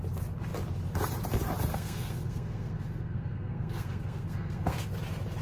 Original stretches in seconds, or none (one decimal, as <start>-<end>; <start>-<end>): 0.0-1.7; 4.9-5.4